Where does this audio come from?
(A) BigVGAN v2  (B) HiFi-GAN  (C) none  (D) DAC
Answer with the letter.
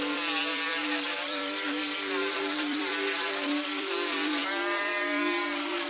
A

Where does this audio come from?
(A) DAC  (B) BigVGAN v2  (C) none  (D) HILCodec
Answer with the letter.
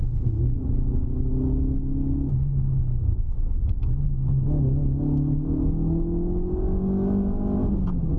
C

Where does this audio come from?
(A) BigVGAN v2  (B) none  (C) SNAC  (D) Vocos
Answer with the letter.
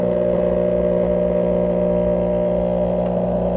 B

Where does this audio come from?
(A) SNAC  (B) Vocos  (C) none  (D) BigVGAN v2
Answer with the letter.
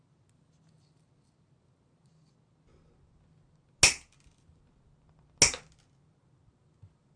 C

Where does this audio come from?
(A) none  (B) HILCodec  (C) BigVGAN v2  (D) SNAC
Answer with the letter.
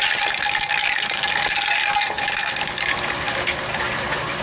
A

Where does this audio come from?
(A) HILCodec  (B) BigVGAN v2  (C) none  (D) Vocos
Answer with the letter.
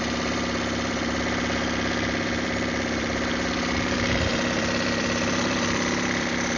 B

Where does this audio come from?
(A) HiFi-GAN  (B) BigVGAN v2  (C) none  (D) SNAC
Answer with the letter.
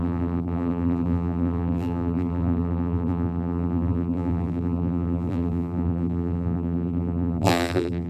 B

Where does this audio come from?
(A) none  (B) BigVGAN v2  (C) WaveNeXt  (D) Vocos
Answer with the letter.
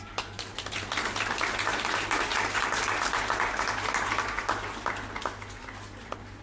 A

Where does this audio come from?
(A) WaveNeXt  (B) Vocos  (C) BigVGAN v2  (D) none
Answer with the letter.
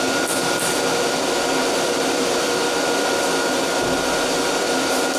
C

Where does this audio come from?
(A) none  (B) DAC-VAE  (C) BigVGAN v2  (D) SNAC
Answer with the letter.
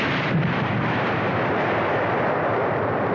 C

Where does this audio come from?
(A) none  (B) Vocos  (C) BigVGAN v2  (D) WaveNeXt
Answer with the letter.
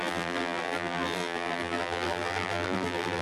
C